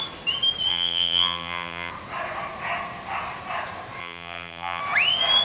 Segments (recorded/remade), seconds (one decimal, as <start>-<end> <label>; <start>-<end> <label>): 0.0-0.7 recorded; 0.7-1.9 remade; 1.9-4.0 recorded; 4.0-4.8 remade; 4.8-5.4 recorded